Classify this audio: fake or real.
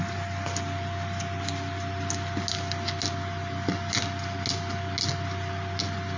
real